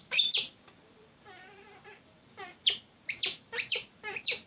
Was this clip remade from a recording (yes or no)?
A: yes